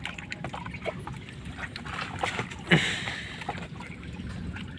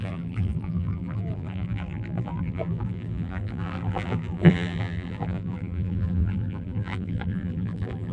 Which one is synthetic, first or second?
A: second